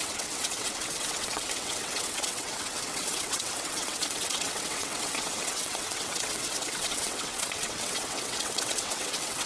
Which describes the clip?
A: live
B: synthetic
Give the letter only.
B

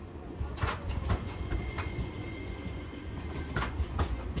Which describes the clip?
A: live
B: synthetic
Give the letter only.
B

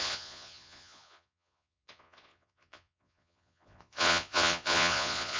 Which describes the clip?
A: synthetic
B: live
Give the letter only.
A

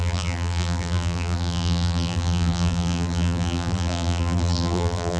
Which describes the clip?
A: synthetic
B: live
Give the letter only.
A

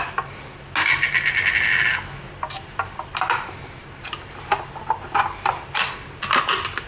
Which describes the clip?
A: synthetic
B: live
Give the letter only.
B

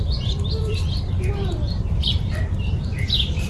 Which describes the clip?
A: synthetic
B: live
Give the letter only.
A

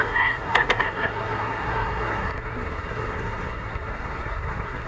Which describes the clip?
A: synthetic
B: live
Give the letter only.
A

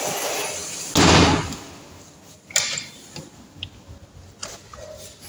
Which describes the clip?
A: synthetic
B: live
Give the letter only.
B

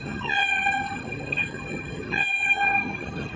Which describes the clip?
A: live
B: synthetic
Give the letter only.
B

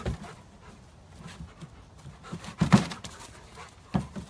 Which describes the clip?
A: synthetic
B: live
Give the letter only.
B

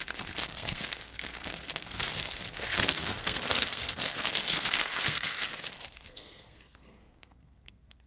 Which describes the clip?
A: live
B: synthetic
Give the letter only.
B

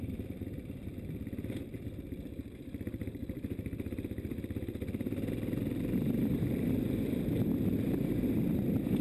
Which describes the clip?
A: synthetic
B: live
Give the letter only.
A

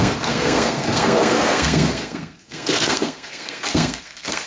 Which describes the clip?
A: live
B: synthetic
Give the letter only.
B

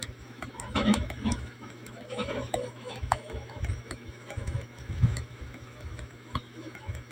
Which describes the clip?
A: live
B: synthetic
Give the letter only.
B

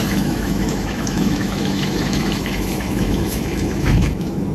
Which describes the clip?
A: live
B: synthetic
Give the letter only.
B